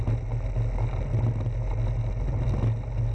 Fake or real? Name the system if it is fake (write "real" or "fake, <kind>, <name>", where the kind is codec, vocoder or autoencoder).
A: real